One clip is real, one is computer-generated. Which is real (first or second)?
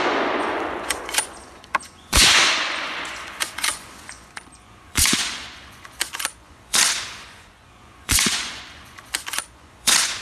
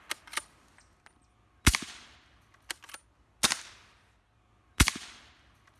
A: second